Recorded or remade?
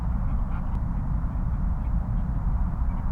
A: recorded